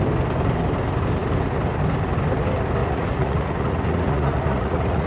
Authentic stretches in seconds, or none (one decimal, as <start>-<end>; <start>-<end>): 0.0-2.8